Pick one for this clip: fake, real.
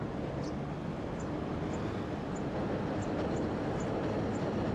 real